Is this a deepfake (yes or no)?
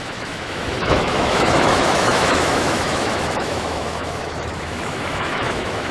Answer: yes